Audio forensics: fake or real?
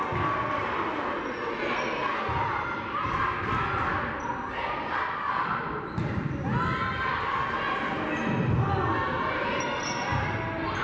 real